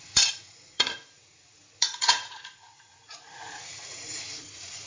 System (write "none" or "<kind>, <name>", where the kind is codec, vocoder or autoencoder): vocoder, Vocos